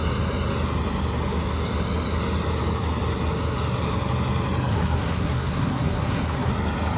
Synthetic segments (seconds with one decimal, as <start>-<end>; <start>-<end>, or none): 4.7-6.5